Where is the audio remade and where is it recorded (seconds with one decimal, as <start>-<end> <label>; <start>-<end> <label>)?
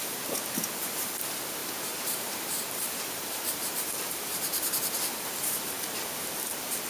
0.0-1.6 recorded; 1.6-5.7 remade; 5.7-6.9 recorded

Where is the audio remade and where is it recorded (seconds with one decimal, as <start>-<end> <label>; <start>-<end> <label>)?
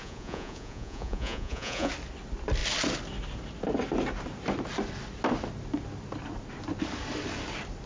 0.0-1.9 remade; 1.9-7.9 recorded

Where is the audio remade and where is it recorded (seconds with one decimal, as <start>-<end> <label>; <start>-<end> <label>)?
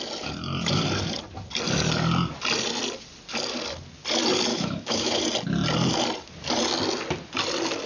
0.0-4.5 recorded; 4.5-5.2 remade; 5.2-7.9 recorded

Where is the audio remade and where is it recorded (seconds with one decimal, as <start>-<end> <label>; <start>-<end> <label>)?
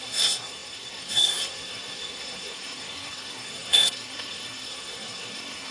0.0-5.7 remade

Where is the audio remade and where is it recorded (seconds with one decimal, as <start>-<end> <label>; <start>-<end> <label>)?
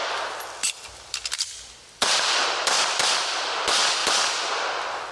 0.0-5.1 recorded